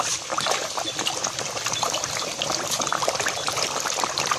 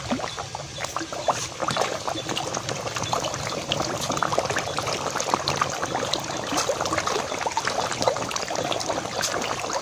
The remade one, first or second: first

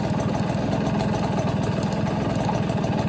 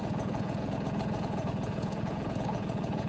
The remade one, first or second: second